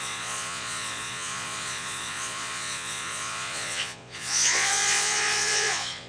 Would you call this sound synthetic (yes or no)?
yes